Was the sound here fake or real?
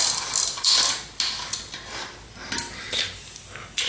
real